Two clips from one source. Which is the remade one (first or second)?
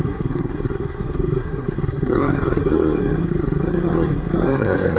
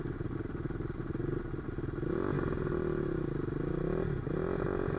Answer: first